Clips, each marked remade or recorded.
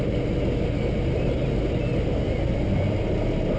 recorded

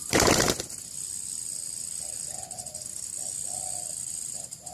recorded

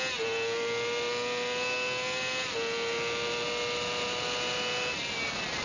recorded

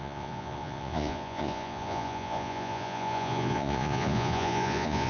remade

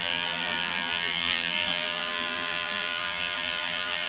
remade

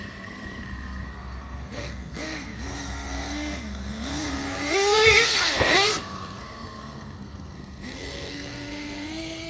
remade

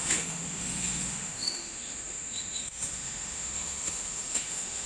remade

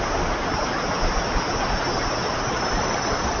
recorded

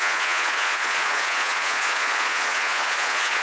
remade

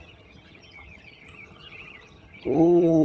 remade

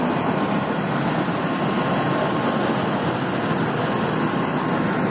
recorded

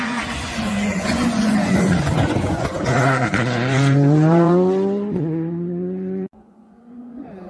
remade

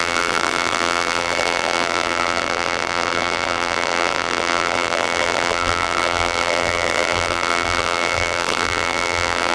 remade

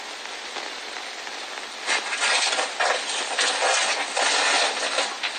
recorded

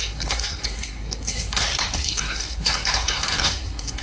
remade